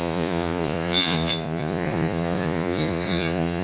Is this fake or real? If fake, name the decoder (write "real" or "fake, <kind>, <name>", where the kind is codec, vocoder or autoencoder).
fake, vocoder, Vocos